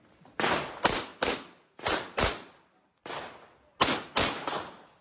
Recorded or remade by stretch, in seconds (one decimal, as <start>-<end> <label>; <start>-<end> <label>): 0.0-5.0 recorded